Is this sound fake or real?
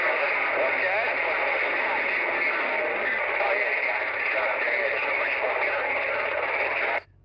real